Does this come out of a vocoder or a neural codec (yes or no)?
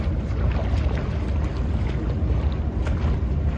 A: no